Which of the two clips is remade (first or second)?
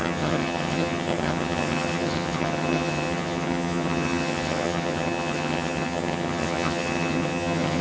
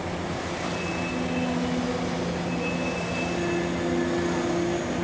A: first